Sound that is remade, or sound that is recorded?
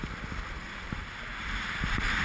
recorded